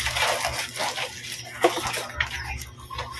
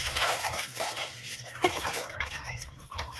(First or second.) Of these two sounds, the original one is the first